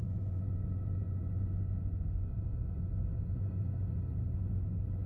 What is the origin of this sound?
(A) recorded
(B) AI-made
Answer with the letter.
B